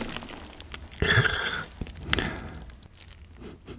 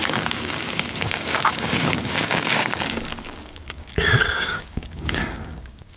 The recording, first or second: first